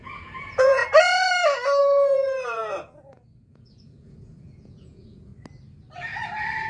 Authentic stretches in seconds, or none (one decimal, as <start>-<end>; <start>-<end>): 0.8-1.8; 2.6-3.1; 5.3-6.7